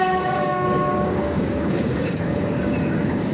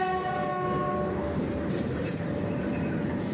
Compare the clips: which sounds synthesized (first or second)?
first